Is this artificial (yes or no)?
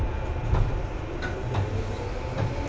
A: no